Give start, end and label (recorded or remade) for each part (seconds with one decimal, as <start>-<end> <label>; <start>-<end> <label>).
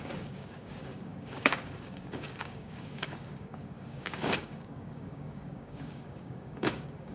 0.0-7.1 remade